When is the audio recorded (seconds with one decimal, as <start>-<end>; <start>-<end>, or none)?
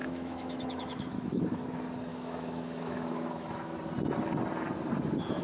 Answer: 1.6-2.1; 3.8-5.4